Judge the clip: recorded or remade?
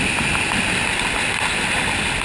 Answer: recorded